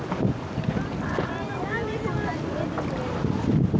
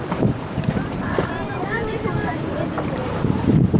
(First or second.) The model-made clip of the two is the second